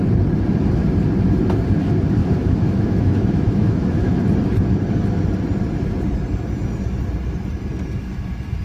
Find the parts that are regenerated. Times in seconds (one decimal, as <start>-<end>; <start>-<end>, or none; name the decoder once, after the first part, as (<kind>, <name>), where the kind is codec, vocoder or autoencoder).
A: 2.2-4.2 (autoencoder, DAC-VAE)